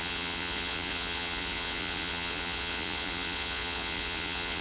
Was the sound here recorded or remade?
remade